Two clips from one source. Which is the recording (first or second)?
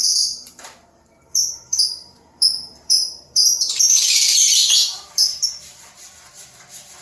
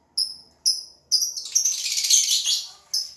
second